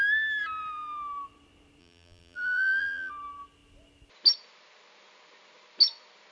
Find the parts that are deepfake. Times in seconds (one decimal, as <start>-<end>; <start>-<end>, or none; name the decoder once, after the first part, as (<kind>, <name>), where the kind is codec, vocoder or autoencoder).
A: 1.8-3.1 (vocoder, BigVGAN v2)